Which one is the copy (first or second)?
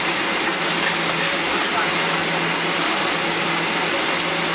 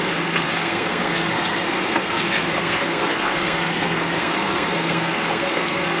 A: second